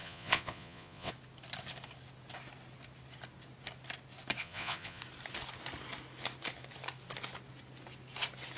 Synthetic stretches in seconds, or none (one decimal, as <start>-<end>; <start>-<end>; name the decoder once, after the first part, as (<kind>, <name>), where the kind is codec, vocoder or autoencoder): 0.0-1.1 (vocoder, Vocos); 4.4-5.0